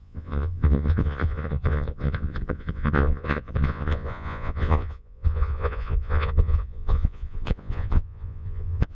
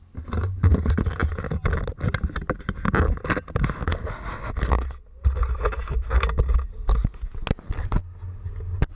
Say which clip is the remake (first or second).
first